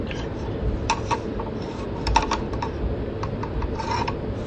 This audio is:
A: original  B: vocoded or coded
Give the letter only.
B